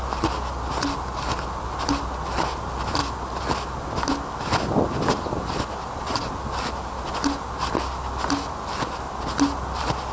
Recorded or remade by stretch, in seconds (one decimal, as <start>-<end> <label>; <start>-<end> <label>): 0.0-10.1 recorded